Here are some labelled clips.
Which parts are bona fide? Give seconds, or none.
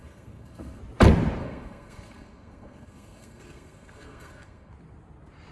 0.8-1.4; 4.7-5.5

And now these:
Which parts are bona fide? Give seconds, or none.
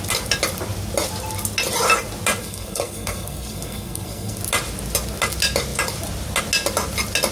0.0-2.4; 4.4-7.3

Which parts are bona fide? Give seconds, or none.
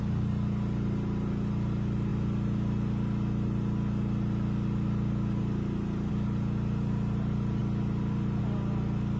0.0-9.2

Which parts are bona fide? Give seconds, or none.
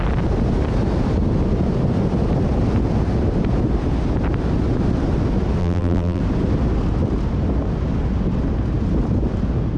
0.0-5.6; 6.2-9.8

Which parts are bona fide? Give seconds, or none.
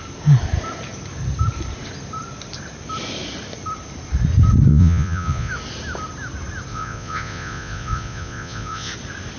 0.0-4.7; 5.5-6.7; 8.9-9.4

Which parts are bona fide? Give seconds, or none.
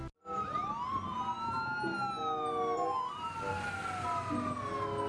0.0-5.1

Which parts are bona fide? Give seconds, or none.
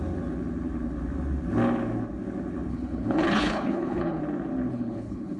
0.0-2.7; 4.2-4.7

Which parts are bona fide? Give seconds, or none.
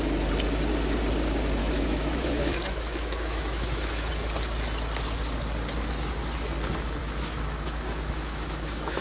0.0-1.6; 4.1-7.0